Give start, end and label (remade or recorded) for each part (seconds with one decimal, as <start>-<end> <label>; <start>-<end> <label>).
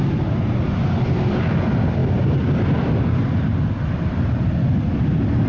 0.0-5.5 recorded